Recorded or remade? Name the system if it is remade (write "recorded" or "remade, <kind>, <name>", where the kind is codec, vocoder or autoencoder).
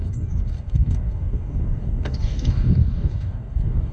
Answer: remade, codec, DAC